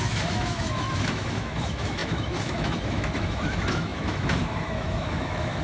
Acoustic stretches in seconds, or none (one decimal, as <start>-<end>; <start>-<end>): none